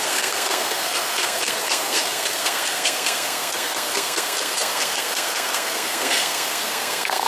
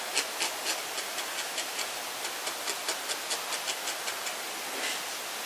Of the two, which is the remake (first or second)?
first